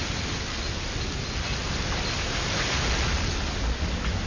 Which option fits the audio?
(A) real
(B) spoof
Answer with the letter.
A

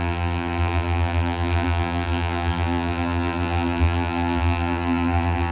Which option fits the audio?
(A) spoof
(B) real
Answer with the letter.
A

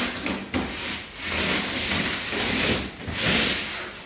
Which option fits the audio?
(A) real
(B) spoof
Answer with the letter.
A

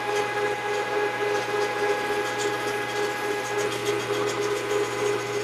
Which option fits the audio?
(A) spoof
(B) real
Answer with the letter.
B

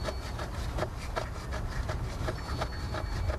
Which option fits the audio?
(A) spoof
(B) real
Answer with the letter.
B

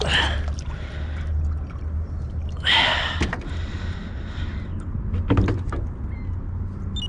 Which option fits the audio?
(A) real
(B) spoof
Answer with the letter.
A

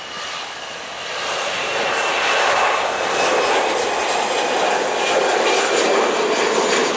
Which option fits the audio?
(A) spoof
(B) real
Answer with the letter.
B